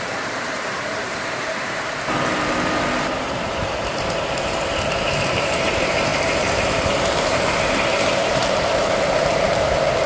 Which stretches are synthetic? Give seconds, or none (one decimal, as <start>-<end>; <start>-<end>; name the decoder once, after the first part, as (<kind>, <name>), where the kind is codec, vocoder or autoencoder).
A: 0.0-3.9 (vocoder, BigVGAN v2); 4.7-10.1